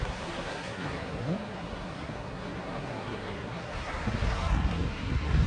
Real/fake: fake